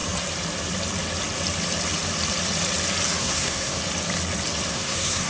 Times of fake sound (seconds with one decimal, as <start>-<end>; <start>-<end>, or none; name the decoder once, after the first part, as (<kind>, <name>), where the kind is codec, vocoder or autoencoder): 3.2-3.8 (codec, SNAC); 4.7-5.3